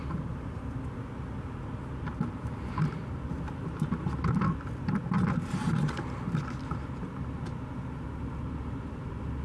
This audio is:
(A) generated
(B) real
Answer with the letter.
B